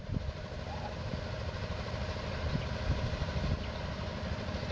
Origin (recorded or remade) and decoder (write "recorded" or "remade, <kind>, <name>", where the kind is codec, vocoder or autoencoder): recorded